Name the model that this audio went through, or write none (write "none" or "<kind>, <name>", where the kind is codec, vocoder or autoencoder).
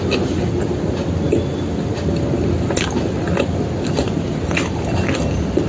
none